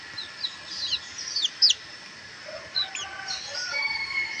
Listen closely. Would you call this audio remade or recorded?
recorded